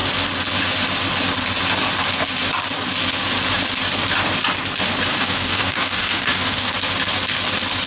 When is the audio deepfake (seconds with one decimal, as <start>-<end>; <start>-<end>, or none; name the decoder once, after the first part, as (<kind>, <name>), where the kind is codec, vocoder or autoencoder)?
5.1-6.7 (codec, DAC)